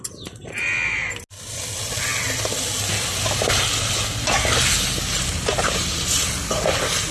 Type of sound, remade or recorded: recorded